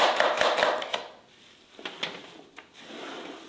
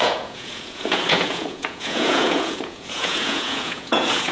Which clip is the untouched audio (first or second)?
first